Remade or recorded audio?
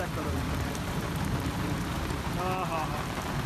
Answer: remade